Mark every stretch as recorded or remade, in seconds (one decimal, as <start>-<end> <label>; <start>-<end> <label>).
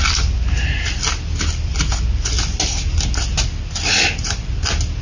0.0-5.0 recorded